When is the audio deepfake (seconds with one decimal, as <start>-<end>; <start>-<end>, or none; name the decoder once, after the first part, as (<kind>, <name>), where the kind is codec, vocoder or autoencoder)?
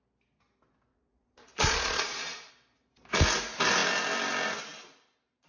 0.9-2.5 (vocoder, Vocos)